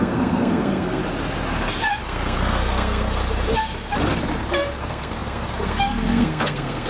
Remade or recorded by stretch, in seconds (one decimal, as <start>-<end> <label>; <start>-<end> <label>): 0.0-1.0 remade; 1.0-2.0 recorded; 2.0-3.2 remade; 3.2-4.8 recorded; 4.8-6.9 remade